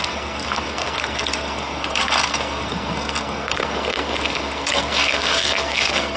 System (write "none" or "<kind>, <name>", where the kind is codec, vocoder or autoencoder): codec, SNAC